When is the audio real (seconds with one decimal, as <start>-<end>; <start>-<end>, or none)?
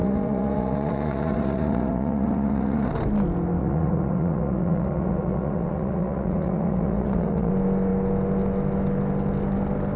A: 2.9-3.6; 7.5-10.0